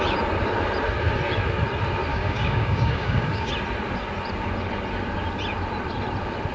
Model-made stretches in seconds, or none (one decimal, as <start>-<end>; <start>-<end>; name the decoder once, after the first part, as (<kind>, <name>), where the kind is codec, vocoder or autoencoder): 2.1-3.5 (codec, DAC)